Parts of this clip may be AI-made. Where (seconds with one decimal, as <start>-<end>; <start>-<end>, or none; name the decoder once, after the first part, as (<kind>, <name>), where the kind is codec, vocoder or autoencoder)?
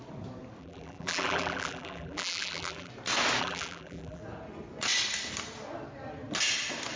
0.6-2.9 (vocoder, BigVGAN v2); 3.4-4.2